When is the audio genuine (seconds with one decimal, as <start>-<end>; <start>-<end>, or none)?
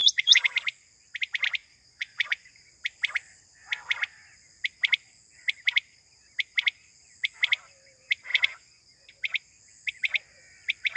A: 0.5-1.6; 2.7-8.3; 9.1-11.0